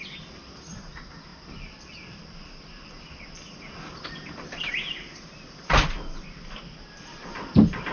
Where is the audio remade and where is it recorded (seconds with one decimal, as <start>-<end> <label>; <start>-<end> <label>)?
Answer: 0.0-7.9 remade